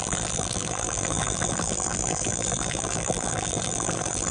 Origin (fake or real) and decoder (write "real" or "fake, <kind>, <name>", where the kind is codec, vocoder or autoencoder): fake, vocoder, BigVGAN v2